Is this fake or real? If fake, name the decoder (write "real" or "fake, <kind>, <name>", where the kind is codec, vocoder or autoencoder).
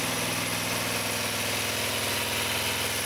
real